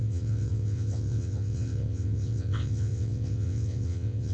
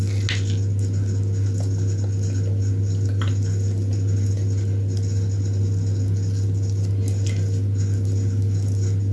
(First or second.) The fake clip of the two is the first